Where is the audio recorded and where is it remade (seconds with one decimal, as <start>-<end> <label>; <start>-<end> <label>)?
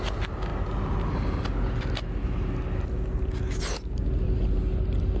0.0-5.2 recorded